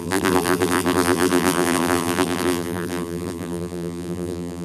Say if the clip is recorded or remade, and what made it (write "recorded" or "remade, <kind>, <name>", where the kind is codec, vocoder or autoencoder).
remade, vocoder, BigVGAN v2